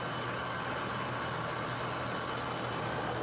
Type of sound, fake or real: real